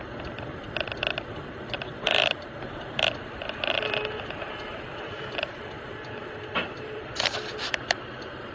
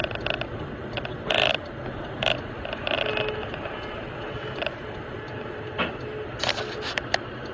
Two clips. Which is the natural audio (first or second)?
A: second